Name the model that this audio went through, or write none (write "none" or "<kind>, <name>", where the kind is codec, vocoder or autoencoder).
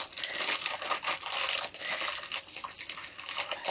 none